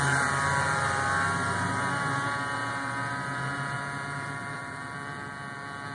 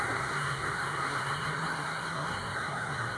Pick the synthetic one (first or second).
second